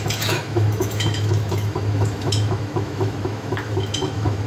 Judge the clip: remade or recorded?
remade